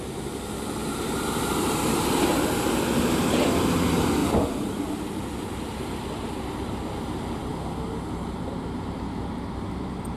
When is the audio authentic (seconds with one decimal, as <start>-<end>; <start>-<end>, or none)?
0.0-0.8; 2.1-10.2